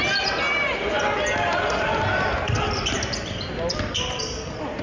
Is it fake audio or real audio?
real